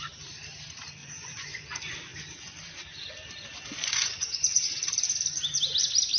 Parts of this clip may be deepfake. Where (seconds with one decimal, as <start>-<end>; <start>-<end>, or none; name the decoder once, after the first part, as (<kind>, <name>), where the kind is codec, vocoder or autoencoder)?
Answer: 1.0-1.6 (vocoder, Vocos); 3.8-4.9